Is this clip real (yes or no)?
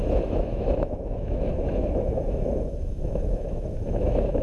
no